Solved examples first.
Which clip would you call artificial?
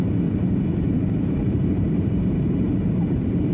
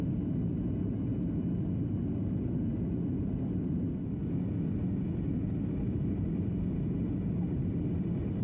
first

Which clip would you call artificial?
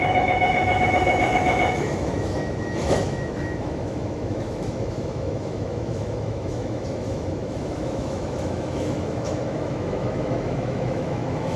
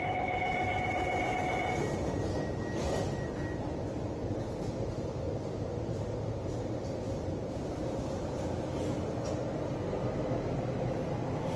first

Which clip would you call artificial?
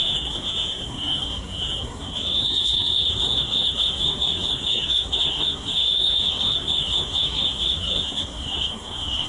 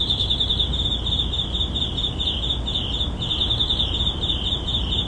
first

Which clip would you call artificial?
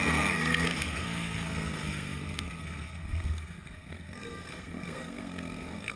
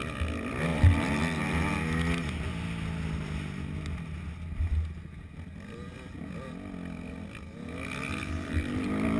first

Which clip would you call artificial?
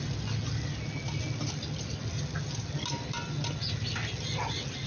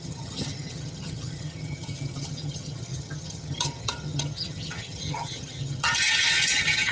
second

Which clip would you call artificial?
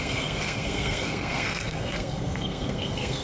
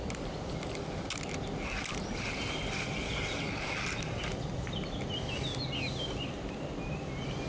first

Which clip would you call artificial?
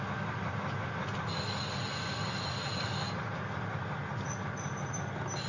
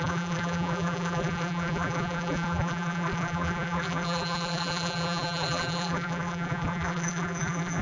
second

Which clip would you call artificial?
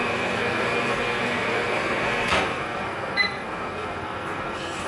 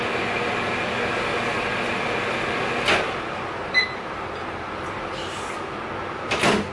first